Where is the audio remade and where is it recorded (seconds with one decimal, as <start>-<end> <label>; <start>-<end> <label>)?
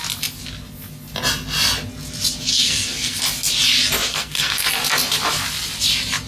0.0-2.5 recorded; 2.5-3.2 remade; 3.2-4.1 recorded; 4.1-4.7 remade; 4.7-6.3 recorded